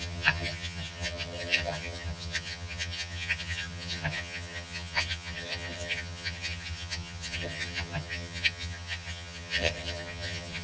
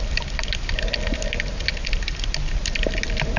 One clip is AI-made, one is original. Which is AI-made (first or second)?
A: first